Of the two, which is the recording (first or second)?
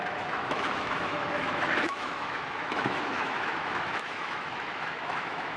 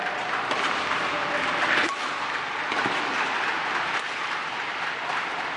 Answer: second